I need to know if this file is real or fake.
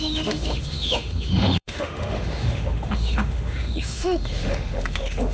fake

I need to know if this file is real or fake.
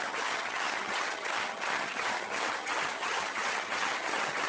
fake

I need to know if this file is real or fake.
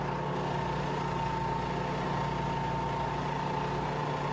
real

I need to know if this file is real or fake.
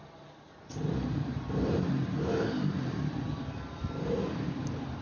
fake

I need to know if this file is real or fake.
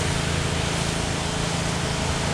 real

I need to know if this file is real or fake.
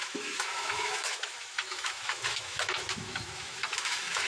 fake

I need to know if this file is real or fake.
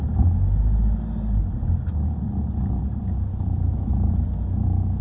real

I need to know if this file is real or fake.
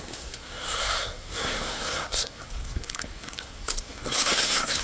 fake